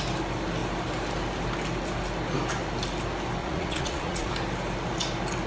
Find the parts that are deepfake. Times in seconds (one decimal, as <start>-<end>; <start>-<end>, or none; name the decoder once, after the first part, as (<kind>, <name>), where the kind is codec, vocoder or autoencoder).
3.4-4.3 (vocoder, Vocos)